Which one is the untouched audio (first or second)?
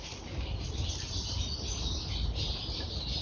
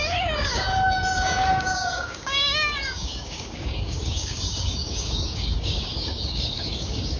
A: first